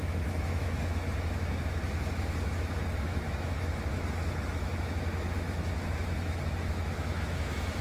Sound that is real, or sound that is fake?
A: fake